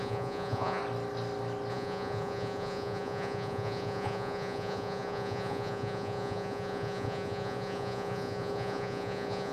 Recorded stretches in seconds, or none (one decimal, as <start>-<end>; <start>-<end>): 0.8-1.7